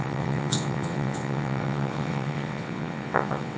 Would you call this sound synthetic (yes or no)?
yes